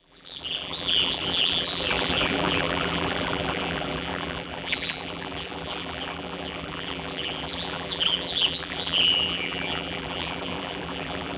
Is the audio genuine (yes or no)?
no